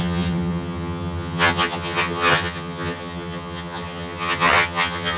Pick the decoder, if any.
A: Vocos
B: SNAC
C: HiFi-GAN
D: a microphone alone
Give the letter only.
C